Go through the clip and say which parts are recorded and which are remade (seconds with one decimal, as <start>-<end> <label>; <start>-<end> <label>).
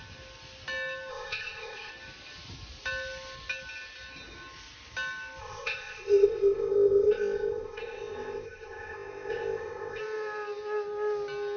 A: 0.0-1.1 recorded; 1.1-1.9 remade; 1.9-5.4 recorded; 5.4-10.0 remade; 10.0-11.6 recorded